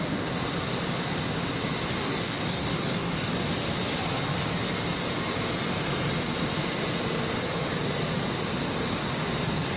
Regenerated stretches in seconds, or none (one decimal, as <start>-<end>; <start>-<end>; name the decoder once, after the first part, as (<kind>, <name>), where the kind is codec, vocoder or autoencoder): 2.0-3.3 (codec, DAC)